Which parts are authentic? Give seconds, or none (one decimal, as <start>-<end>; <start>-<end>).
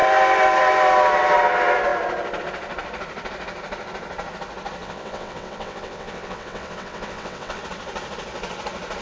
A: 0.0-4.8; 7.6-9.0